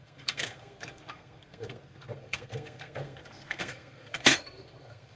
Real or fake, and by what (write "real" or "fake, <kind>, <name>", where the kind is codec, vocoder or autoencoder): fake, codec, SNAC